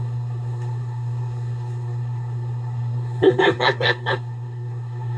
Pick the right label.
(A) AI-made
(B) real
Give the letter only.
A